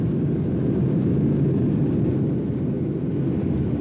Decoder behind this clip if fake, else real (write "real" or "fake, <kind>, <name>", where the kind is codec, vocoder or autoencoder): real